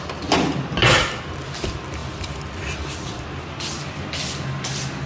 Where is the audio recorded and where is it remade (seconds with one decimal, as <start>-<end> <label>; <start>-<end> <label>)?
0.0-5.1 recorded